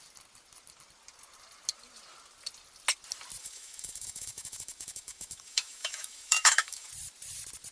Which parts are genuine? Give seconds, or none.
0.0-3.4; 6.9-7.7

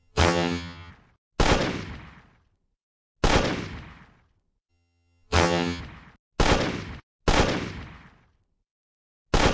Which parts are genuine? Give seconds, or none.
0.9-4.7; 5.8-9.5

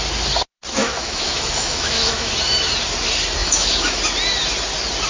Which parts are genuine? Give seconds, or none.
0.0-0.8; 2.3-3.4; 4.0-5.1

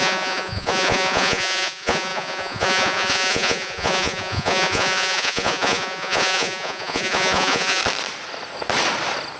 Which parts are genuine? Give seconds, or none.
7.8-9.4

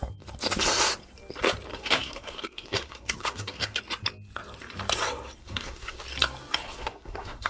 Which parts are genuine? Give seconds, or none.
0.0-1.7; 3.8-5.4; 6.0-6.7

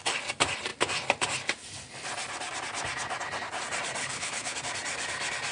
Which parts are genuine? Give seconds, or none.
0.0-4.0; 4.6-5.5

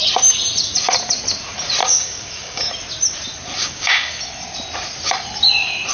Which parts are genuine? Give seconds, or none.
0.0-1.8; 2.7-3.6; 4.2-5.9

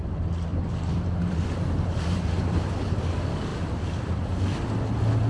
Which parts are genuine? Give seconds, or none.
0.0-0.5; 3.0-3.5; 4.6-5.3